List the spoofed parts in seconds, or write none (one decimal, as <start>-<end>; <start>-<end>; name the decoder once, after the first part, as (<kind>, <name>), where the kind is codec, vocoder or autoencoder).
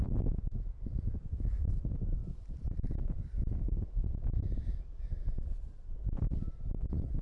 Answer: 2.2-3.2 (vocoder, BigVGAN v2); 3.7-6.5